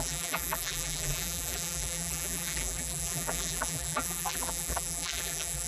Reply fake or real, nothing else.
fake